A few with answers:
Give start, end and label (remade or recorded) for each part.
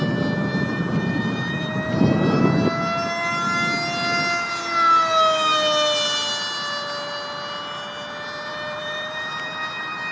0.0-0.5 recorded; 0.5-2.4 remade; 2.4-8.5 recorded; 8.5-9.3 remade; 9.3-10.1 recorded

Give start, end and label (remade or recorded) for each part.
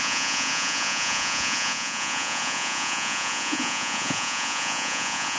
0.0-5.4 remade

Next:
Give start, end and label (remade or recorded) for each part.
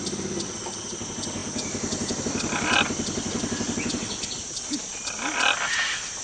0.0-6.2 recorded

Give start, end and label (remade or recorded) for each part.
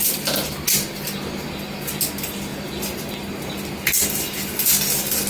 0.0-5.3 recorded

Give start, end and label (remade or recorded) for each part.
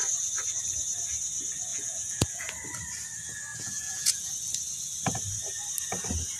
0.0-1.7 recorded; 1.7-2.5 remade; 2.5-3.5 recorded; 3.5-4.3 remade; 4.3-6.4 recorded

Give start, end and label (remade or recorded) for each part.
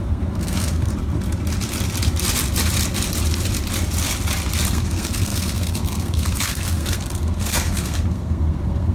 0.0-0.9 remade; 0.9-4.7 recorded; 4.7-8.9 remade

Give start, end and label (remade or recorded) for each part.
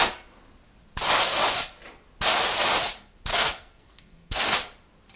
0.0-3.3 recorded; 3.3-4.4 remade; 4.4-5.2 recorded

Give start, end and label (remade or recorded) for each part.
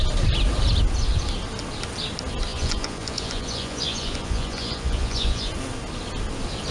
0.0-2.5 recorded; 2.5-5.5 remade; 5.5-6.7 recorded